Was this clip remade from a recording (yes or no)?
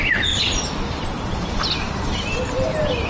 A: no